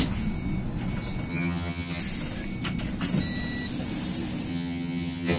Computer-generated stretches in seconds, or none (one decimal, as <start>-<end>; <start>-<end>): 1.3-2.0; 4.5-5.4